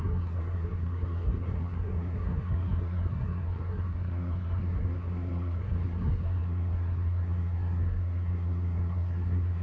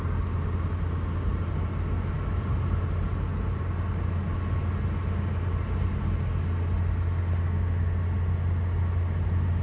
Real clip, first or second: second